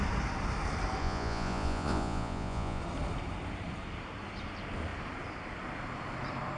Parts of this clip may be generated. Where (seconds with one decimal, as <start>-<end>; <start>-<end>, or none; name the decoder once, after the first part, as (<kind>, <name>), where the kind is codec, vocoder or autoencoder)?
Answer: 1.0-2.8 (vocoder, Vocos)